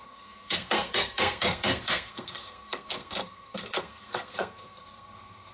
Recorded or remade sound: remade